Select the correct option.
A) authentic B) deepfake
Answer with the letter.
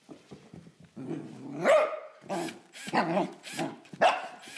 A